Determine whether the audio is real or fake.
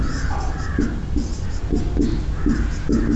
real